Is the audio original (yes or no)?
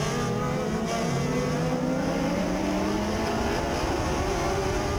yes